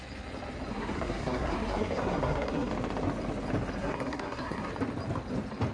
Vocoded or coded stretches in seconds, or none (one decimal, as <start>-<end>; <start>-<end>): 0.7-2.7; 3.8-4.7